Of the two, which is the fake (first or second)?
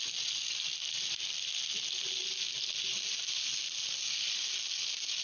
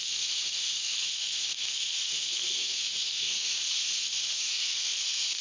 second